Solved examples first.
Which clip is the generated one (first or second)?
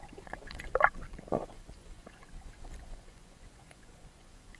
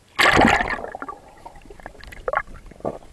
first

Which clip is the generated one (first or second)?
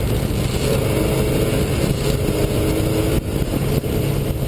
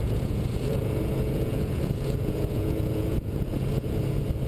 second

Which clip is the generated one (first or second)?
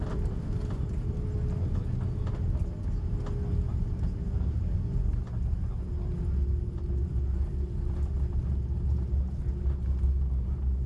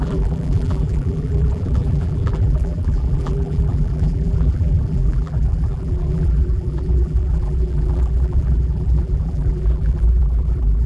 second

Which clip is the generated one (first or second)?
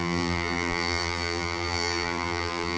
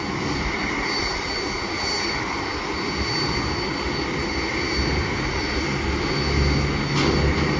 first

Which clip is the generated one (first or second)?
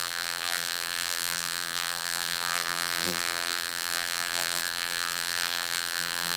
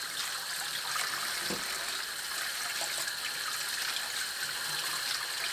first